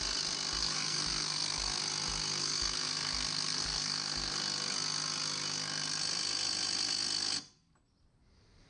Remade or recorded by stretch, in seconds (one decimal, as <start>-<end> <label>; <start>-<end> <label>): 0.0-0.6 recorded; 0.6-1.8 remade; 1.8-2.4 recorded; 2.4-4.4 remade; 4.4-8.7 recorded